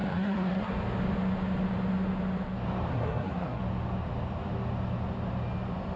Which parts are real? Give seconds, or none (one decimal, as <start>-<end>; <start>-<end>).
0.7-2.9; 3.6-6.0